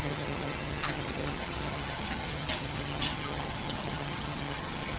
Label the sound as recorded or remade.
remade